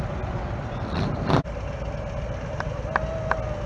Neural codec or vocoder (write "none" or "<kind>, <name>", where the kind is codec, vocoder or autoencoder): none